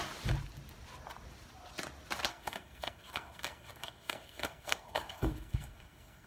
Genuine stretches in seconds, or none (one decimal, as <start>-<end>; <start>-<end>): 0.0-2.3